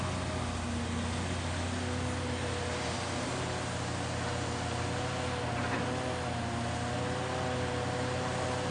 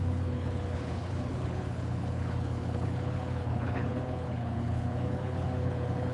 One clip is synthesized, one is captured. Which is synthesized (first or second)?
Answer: second